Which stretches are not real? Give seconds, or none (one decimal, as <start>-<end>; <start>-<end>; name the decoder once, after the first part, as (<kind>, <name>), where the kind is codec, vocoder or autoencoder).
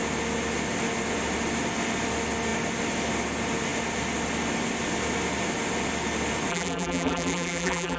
6.5-8.0 (vocoder, BigVGAN v2)